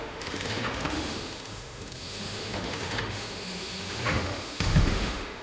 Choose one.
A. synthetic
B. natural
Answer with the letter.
A